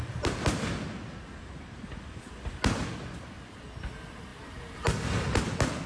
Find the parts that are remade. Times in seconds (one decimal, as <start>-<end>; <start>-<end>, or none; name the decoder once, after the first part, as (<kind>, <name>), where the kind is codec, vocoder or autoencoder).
none